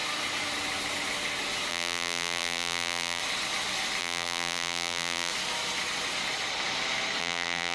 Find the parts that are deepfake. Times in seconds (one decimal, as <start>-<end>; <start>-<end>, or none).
1.7-3.2; 4.0-5.3; 7.2-7.7